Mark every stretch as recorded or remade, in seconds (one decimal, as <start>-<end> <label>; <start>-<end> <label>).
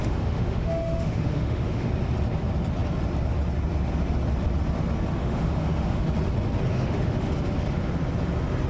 0.0-1.9 remade; 1.9-5.2 recorded; 5.2-6.0 remade; 6.0-6.7 recorded; 6.7-7.3 remade; 7.3-8.7 recorded